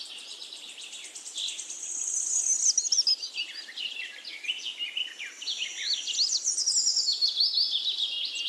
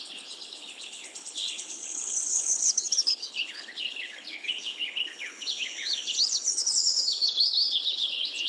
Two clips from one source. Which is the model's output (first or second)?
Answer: second